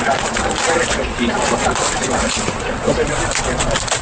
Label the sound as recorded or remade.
remade